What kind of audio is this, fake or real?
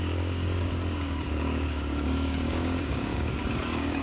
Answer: fake